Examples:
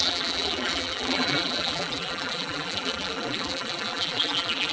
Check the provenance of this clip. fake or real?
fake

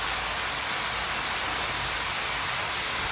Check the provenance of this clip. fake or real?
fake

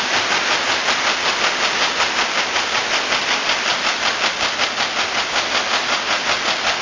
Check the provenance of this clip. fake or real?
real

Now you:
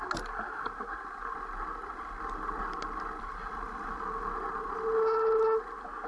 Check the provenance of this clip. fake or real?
real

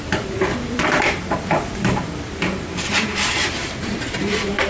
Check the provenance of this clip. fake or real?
fake